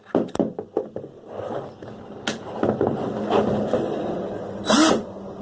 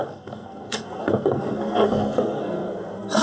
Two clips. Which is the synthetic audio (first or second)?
second